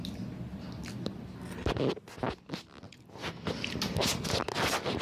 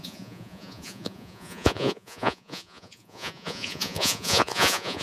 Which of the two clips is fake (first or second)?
second